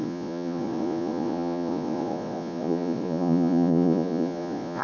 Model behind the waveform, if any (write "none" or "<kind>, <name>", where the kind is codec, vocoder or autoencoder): vocoder, Vocos